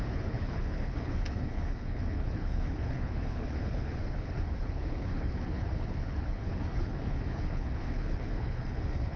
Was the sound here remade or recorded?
remade